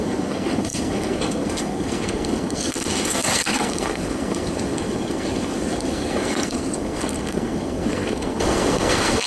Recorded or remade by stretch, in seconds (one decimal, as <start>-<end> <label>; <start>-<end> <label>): 0.0-9.3 remade